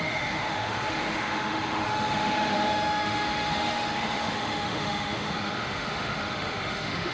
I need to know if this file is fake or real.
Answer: fake